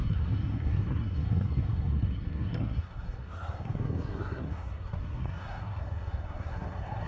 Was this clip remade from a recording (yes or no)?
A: yes